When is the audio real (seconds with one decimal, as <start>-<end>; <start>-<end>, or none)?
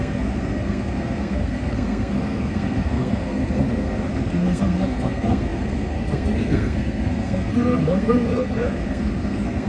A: none